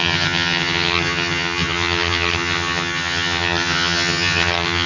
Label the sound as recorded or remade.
remade